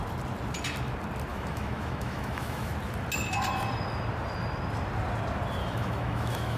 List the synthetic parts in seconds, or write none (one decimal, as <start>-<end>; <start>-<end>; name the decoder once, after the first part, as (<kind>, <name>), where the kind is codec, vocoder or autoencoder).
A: 1.3-2.7 (autoencoder, DAC-VAE); 5.6-6.6